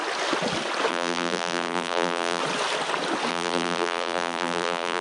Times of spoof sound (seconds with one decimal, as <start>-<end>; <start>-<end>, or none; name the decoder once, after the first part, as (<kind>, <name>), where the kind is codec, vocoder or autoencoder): 0.9-2.4 (vocoder, BigVGAN v2); 3.3-5.0